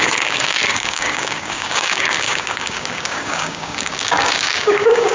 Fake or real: fake